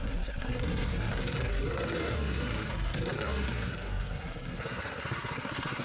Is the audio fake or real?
fake